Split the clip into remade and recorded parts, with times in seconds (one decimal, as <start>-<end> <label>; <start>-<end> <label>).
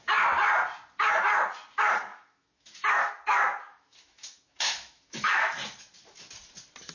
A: 0.0-2.1 recorded; 2.1-3.1 remade; 3.1-3.7 recorded; 3.7-5.5 remade; 5.5-6.9 recorded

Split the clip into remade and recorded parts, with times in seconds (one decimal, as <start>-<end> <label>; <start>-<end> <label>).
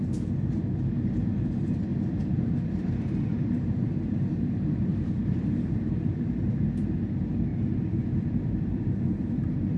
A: 0.0-1.9 recorded; 1.9-6.6 remade; 6.6-7.5 recorded; 7.5-9.8 remade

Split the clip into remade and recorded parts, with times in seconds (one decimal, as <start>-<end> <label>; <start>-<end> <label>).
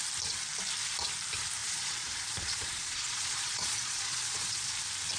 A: 0.0-1.6 recorded; 1.6-4.7 remade; 4.7-5.2 recorded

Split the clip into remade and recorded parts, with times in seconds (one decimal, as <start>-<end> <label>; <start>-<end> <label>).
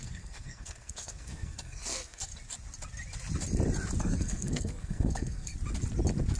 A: 0.0-2.3 remade; 2.3-4.0 recorded; 4.0-5.5 remade; 5.5-6.4 recorded